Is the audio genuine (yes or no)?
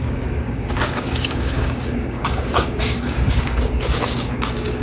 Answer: no